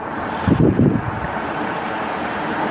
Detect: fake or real fake